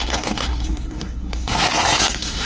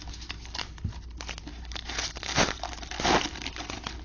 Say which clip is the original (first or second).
second